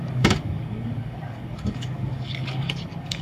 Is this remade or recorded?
remade